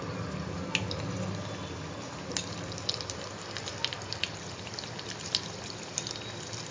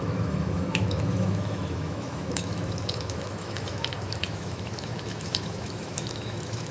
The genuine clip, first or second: first